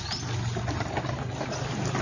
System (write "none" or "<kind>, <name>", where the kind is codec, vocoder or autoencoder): none